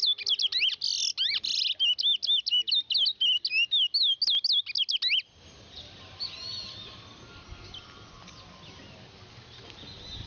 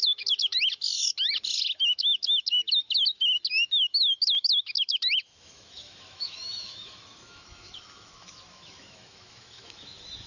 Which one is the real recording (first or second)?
first